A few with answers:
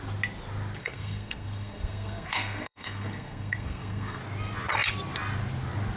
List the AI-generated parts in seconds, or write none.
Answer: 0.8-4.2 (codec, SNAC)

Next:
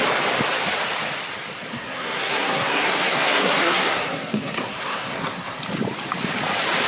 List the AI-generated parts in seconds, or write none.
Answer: 1.7-5.6 (codec, SNAC)

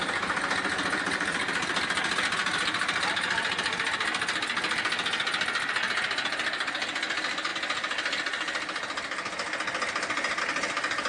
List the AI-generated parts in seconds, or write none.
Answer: none

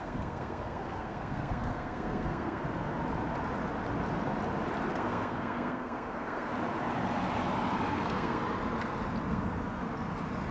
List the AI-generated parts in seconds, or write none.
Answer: 0.0-2.6 (codec, SNAC); 4.9-6.5; 7.9-8.4; 9.3-9.8

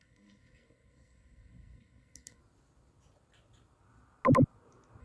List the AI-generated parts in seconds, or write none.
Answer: 0.0-2.4 (codec, SNAC)

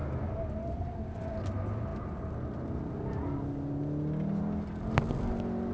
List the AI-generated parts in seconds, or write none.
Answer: none

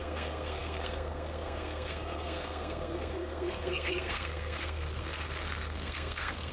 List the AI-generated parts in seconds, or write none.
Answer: 0.0-6.5 (codec, SNAC)